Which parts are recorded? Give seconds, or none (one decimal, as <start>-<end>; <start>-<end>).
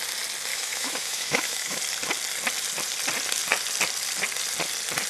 0.0-0.5; 1.8-5.1